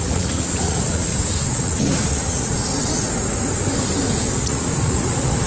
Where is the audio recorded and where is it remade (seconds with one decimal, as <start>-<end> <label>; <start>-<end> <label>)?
0.0-1.1 remade; 1.1-1.6 recorded; 1.6-2.7 remade; 2.7-4.4 recorded; 4.4-5.5 remade